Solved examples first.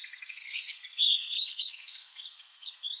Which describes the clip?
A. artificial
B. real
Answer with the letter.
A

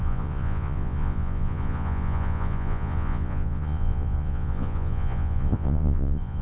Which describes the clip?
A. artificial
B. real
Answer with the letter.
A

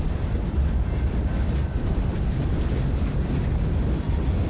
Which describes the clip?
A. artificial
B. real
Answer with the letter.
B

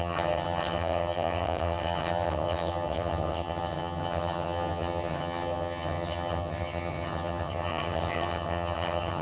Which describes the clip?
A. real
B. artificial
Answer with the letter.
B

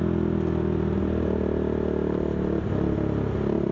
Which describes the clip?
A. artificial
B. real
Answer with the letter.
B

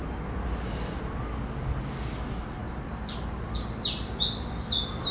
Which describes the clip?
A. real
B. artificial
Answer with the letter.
A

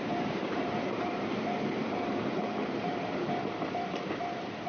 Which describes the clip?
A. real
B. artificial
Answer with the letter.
B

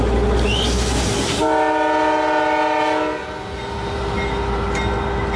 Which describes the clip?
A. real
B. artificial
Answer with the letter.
A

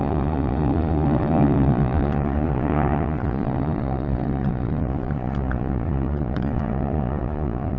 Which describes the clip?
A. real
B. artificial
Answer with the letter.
B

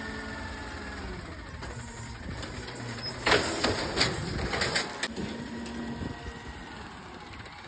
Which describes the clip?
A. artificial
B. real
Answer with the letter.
B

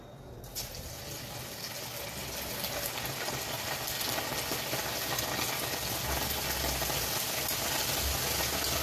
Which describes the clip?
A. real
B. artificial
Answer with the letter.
A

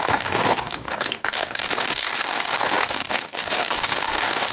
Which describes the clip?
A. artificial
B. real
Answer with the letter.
A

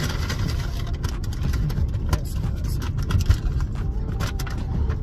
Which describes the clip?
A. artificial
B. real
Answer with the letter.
B